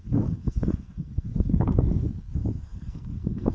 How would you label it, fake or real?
fake